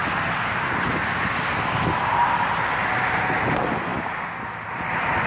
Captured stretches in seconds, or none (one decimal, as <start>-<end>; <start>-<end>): 0.0-5.3